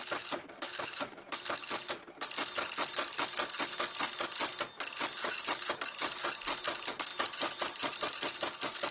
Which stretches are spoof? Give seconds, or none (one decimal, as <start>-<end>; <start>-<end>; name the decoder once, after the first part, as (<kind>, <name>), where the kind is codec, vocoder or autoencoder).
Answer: none